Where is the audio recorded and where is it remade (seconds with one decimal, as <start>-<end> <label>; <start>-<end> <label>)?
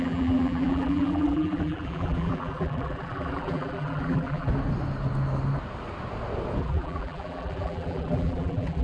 0.0-4.5 remade; 4.5-6.6 recorded; 6.6-8.8 remade